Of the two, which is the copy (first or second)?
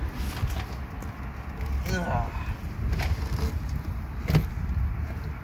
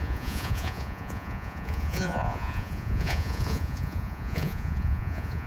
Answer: second